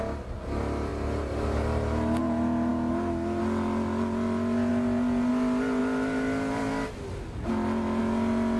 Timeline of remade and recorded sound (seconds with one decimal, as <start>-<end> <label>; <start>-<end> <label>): 0.0-8.6 recorded

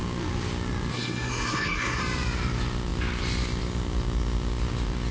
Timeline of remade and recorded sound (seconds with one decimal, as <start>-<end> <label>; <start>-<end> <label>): 0.0-0.9 recorded; 0.9-2.0 remade; 2.0-5.1 recorded